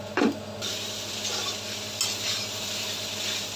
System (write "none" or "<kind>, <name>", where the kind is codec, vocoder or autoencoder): none